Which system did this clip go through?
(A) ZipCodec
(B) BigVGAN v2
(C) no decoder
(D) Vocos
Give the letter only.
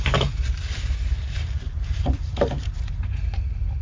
B